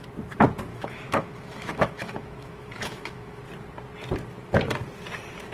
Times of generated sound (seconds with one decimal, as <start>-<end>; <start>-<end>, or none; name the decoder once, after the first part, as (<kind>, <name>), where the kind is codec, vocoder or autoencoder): 0.7-3.4 (autoencoder, DAC-VAE)